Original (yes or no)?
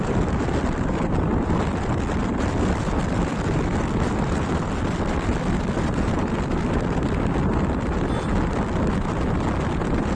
yes